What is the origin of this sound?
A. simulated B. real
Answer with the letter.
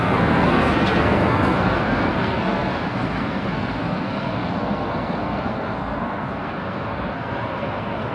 A